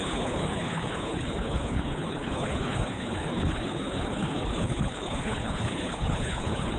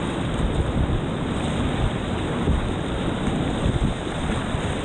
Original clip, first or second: second